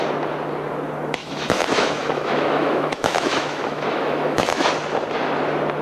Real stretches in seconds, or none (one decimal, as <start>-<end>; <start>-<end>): 0.0-1.2; 4.7-5.8